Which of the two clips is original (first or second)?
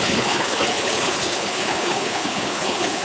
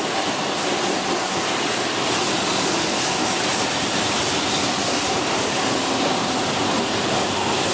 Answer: second